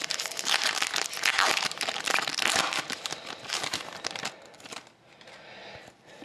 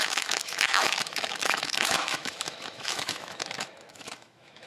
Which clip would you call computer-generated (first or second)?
second